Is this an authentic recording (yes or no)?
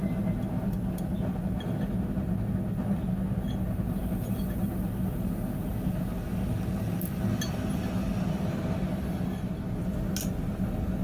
yes